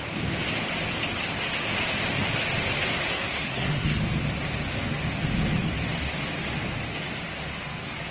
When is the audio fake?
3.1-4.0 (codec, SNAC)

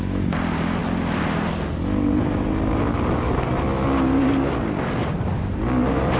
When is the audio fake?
5.0-5.6 (vocoder, BigVGAN v2)

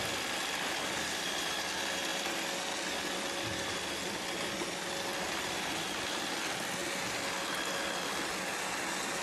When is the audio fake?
none